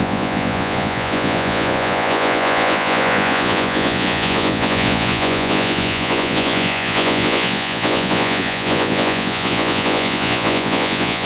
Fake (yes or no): yes